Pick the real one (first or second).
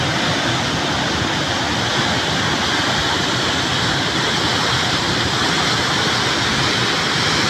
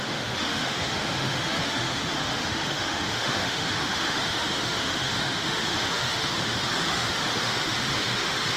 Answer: first